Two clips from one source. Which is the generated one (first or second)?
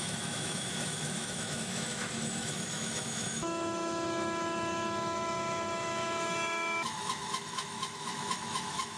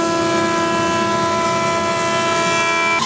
first